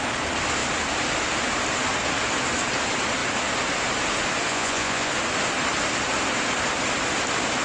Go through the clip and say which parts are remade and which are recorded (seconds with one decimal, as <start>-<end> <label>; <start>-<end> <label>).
0.0-4.5 recorded; 4.5-5.1 remade; 5.1-7.6 recorded